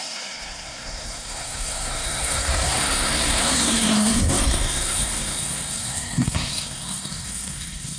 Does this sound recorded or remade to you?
remade